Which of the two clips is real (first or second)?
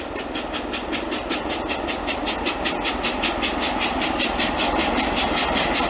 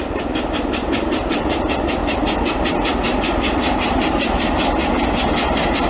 first